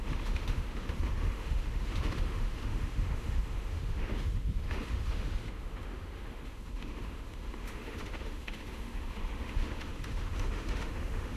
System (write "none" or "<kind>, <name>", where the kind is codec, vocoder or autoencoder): autoencoder, DAC-VAE